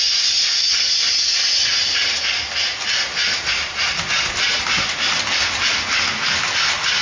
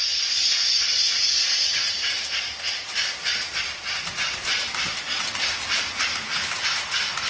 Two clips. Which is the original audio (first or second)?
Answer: first